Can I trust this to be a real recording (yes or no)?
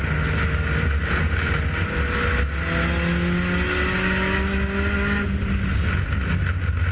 yes